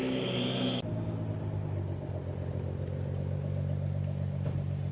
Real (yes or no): yes